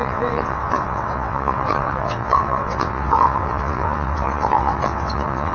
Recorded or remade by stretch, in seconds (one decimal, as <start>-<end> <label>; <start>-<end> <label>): 0.0-5.5 remade